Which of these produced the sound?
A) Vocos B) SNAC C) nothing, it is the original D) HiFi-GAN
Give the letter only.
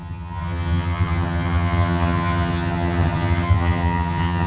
D